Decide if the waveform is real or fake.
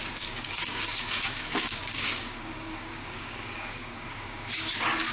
fake